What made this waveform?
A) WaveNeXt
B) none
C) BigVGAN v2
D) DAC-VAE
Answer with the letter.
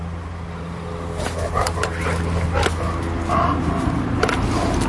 B